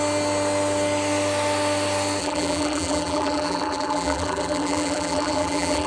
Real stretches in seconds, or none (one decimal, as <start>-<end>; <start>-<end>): 0.0-2.2